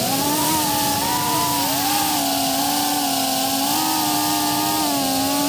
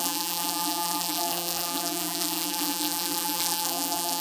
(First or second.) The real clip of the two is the first